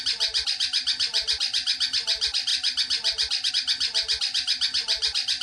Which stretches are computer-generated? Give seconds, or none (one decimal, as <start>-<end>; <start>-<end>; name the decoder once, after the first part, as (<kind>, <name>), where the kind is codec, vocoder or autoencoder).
none